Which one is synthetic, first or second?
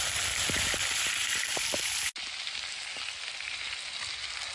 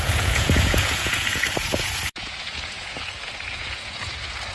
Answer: second